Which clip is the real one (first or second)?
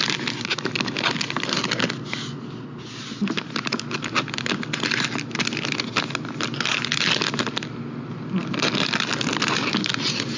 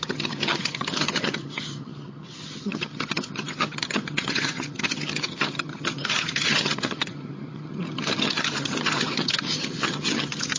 first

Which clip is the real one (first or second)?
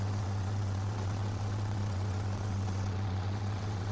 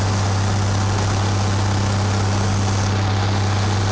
second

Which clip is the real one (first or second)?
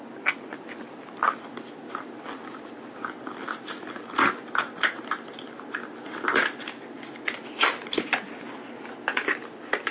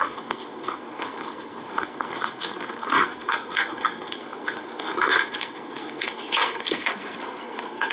first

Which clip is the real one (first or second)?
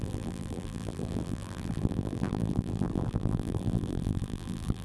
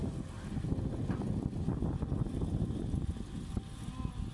second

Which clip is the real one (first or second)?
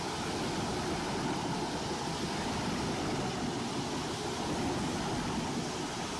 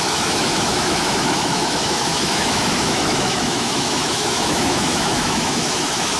first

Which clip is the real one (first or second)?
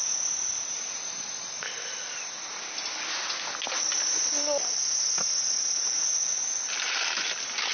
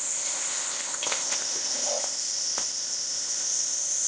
first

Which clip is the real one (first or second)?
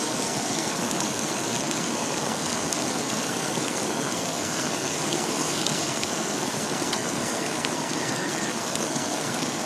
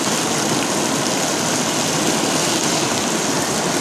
second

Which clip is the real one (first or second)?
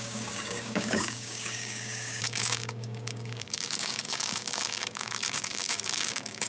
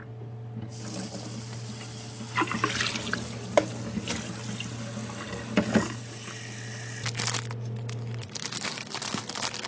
second